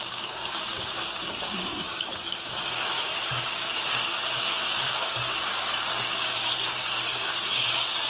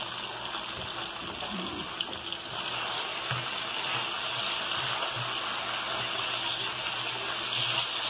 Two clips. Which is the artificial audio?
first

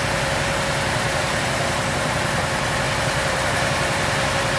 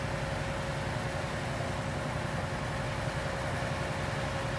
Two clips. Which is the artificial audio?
first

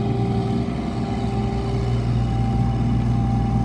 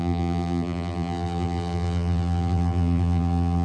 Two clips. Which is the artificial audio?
second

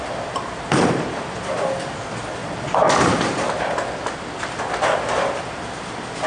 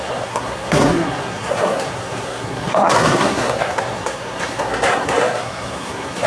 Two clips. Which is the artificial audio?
second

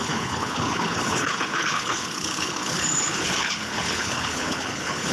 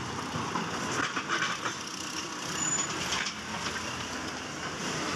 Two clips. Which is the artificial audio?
first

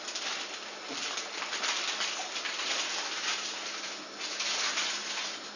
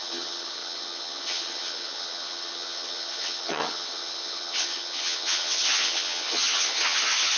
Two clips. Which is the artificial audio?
second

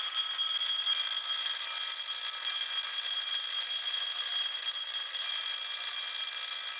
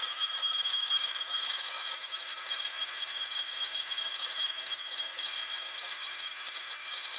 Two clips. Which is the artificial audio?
second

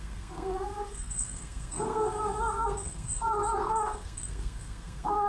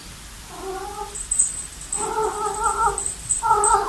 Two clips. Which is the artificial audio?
first